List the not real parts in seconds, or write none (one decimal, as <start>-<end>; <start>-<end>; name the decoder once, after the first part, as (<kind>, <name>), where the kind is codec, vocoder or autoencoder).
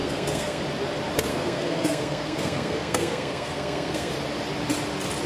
0.0-0.6 (codec, SNAC); 1.3-4.1